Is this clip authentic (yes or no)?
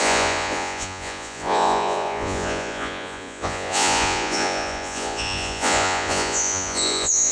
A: no